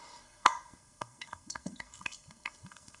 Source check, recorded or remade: remade